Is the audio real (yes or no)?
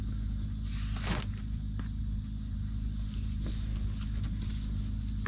yes